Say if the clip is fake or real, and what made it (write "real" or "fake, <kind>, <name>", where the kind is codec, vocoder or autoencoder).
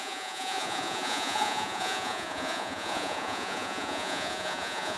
fake, vocoder, Vocos